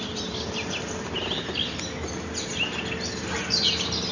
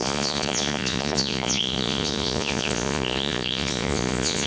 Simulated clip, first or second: second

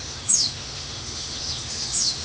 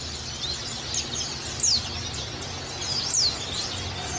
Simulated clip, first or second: first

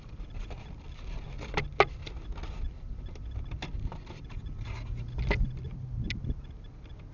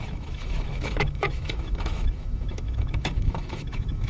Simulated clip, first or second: second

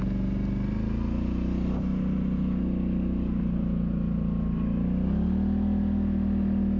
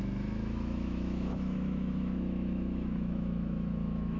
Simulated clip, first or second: second